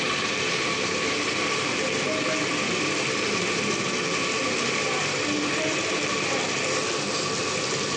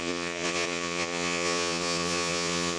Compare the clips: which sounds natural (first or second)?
first